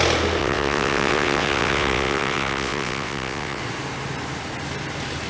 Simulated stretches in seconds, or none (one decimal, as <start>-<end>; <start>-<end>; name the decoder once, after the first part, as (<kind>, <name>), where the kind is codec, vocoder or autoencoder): 0.4-3.6 (vocoder, WaveNeXt)